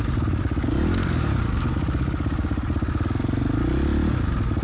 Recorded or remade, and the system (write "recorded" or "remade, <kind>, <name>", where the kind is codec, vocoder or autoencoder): recorded